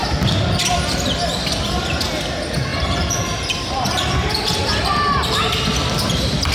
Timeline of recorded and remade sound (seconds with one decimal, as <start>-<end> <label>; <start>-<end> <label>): 0.0-0.8 remade; 0.8-2.7 recorded; 2.7-4.4 remade; 4.4-6.5 recorded